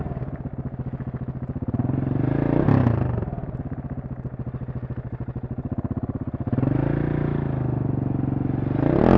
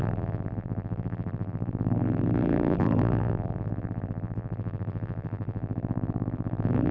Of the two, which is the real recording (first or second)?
first